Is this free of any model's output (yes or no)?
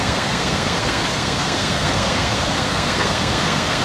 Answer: no